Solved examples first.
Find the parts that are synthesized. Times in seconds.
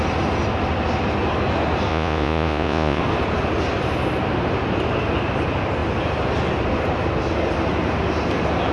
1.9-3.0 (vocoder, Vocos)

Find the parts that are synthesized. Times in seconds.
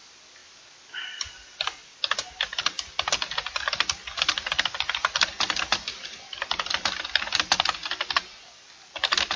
0.0-0.4 (vocoder, BigVGAN v2); 4.8-7.8; 8.7-9.4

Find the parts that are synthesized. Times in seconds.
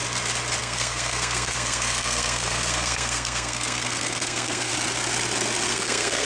0.6-4.7 (codec, SNAC); 5.7-6.2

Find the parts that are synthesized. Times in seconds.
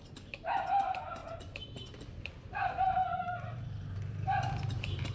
0.0-1.2 (vocoder, BigVGAN v2); 2.5-5.1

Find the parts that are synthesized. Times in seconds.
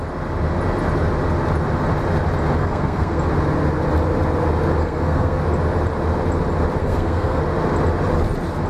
2.6-3.2 (codec, SNAC); 4.8-5.4; 6.8-7.4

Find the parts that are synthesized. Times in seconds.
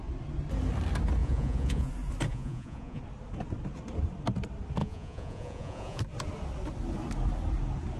1.2-1.9 (vocoder, Vocos); 2.3-3.0; 4.8-6.0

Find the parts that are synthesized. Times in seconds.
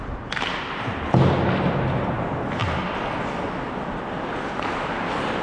none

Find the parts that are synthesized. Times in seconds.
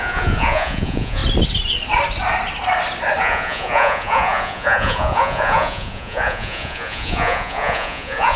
0.0-1.2 (vocoder, Vocos); 3.2-8.4